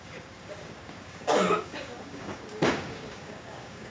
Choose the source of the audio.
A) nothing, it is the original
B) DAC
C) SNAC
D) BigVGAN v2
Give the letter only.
B